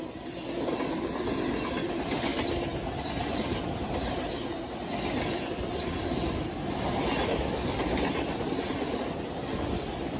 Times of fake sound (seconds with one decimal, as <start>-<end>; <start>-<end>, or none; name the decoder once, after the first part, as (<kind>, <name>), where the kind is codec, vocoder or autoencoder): none